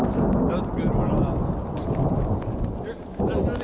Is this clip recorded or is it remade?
recorded